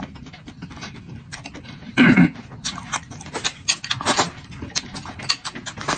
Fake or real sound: real